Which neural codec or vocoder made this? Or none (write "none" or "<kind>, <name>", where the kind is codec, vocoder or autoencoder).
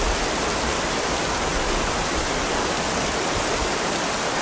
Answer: none